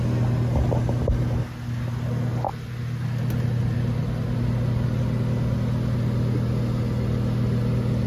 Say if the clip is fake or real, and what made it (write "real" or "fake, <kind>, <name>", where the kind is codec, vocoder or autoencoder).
real